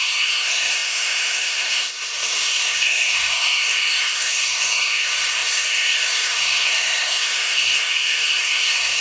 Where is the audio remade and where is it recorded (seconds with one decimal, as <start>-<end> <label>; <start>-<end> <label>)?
0.0-9.0 remade